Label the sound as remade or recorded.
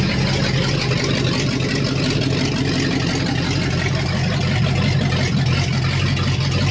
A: recorded